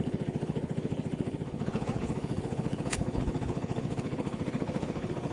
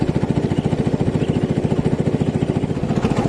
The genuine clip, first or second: second